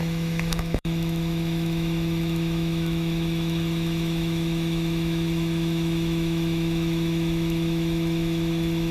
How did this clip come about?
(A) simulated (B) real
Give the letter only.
A